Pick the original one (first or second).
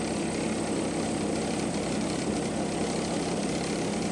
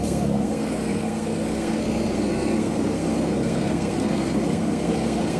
first